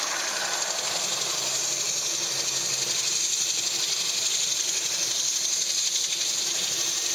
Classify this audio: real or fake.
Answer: real